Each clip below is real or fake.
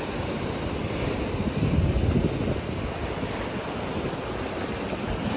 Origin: real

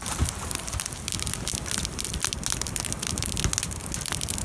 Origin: real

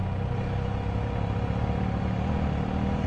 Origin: real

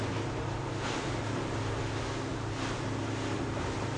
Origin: real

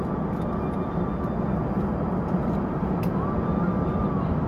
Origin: real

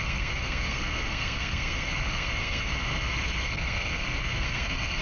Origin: fake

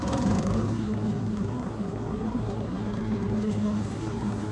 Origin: fake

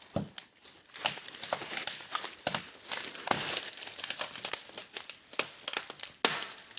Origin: real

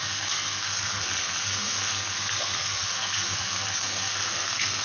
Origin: fake